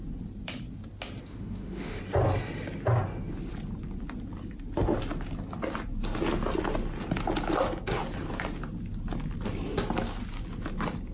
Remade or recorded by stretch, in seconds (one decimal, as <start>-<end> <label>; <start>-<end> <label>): 0.0-1.3 recorded; 1.3-2.0 remade; 2.0-11.1 recorded